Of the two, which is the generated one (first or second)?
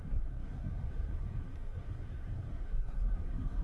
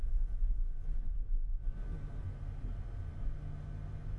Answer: first